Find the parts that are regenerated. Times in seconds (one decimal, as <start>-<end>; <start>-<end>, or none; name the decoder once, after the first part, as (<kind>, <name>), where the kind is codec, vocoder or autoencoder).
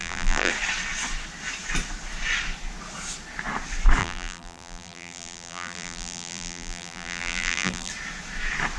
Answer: 0.0-0.5 (vocoder, BigVGAN v2); 4.0-7.9